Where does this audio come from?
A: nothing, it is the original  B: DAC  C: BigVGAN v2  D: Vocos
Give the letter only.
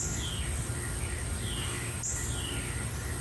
A